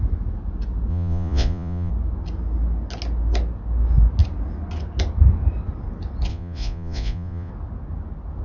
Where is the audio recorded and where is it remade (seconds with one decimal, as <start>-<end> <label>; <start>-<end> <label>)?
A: 0.0-0.9 recorded; 0.9-1.9 remade; 1.9-6.3 recorded; 6.3-7.5 remade; 7.5-8.4 recorded